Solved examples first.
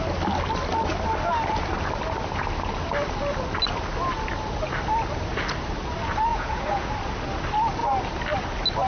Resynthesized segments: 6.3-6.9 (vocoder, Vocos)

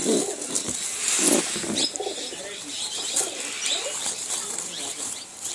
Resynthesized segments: none

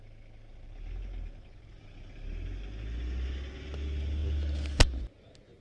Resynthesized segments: none

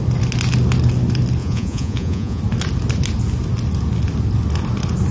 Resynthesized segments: 1.4-2.4 (vocoder, Vocos)